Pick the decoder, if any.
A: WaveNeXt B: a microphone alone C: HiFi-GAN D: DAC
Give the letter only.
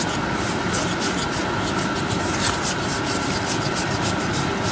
B